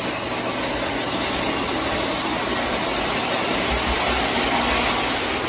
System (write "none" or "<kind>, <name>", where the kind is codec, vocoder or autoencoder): none